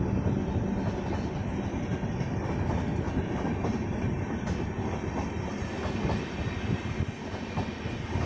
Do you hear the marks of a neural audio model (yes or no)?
no